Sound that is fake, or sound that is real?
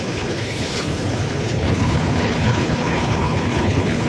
fake